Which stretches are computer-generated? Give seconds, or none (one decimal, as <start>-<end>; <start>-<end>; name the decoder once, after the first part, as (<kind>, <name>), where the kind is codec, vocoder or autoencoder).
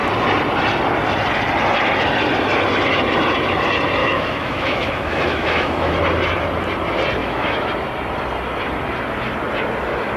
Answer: 4.0-5.9 (autoencoder, DAC-VAE); 7.2-7.7